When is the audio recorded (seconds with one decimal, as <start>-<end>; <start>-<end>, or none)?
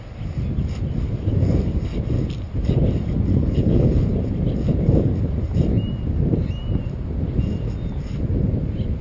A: 0.0-3.3; 4.0-9.0